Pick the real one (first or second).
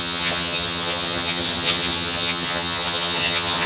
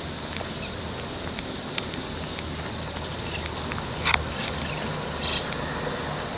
second